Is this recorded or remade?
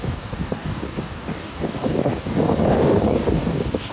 remade